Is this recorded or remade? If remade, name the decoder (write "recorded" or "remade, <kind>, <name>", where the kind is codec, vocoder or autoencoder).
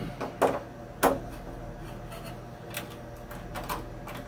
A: recorded